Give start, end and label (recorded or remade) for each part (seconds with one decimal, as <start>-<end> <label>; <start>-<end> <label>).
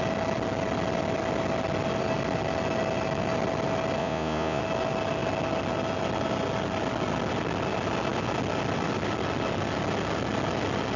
0.0-4.0 recorded; 4.0-4.6 remade; 4.6-11.0 recorded